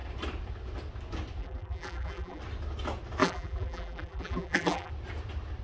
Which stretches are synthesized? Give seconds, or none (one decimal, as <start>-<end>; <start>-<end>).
1.4-2.4; 3.2-4.9